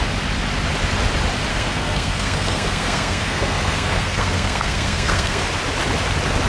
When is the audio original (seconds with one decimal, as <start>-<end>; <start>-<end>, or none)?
0.0-1.5; 5.4-6.5